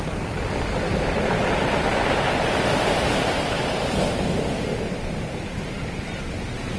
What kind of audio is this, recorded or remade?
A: recorded